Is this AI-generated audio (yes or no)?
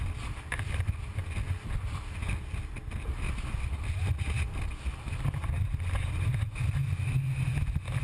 no